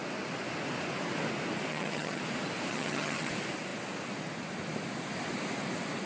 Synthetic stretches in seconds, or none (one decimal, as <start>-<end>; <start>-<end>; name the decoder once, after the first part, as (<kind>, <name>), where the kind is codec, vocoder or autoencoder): 1.7-2.2 (vocoder, HiFi-GAN); 2.7-3.3